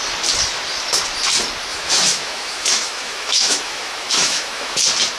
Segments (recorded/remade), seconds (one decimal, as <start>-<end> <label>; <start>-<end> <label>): 0.0-1.7 recorded; 1.7-4.8 remade; 4.8-5.2 recorded